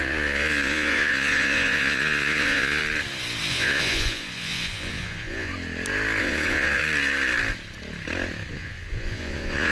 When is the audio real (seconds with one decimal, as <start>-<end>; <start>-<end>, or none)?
2.8-3.5; 5.5-6.2; 6.8-8.5